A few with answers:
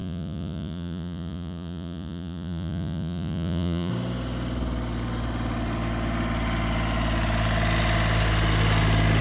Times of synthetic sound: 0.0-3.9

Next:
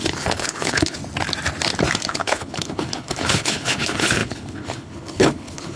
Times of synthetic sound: 0.0-1.0; 2.1-5.8

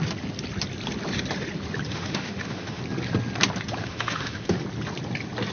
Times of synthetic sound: 1.9-2.8; 3.8-4.6

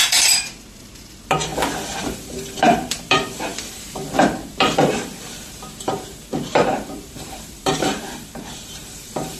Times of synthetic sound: 0.0-1.5; 2.0-9.4

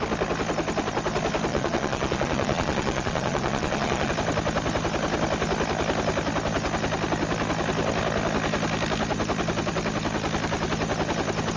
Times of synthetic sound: 1.5-4.1

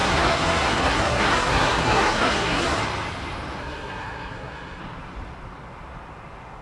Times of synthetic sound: 0.0-2.8; 3.6-4.8

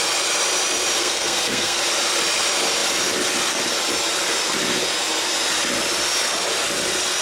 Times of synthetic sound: 1.0-1.8